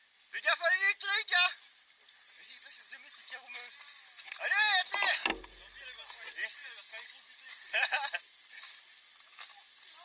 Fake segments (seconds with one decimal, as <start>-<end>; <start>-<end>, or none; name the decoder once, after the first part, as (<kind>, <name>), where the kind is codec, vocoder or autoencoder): none